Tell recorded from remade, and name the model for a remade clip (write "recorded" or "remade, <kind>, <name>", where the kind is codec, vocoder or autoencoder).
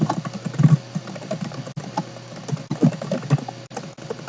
recorded